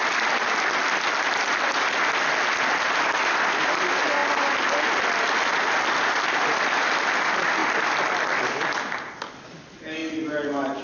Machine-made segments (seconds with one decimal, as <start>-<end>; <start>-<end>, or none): none